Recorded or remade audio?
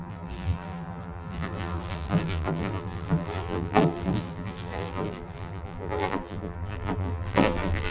remade